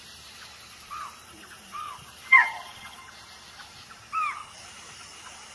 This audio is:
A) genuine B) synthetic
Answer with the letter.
B